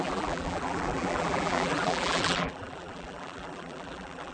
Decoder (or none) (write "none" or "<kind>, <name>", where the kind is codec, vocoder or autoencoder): vocoder, BigVGAN v2